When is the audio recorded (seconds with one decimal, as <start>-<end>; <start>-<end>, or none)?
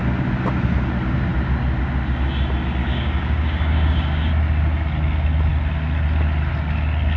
0.0-2.8; 4.3-7.2